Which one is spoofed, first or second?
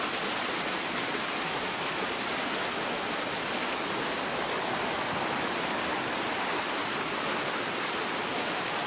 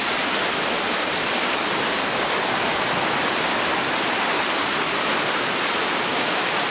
second